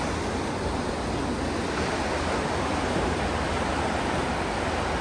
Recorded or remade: recorded